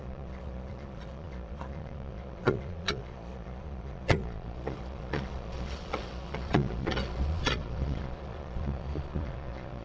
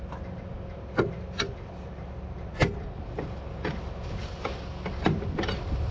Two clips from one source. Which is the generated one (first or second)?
first